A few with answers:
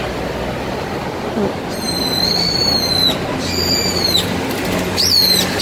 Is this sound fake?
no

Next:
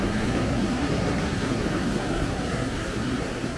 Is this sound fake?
yes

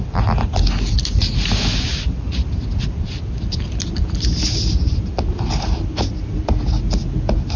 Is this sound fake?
no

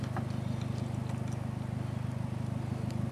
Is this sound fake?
no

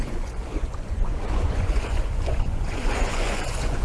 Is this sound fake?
yes